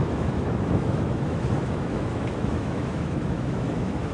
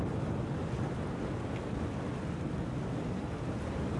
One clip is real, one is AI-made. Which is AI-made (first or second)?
first